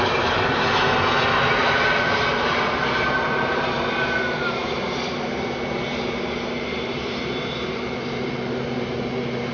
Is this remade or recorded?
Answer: recorded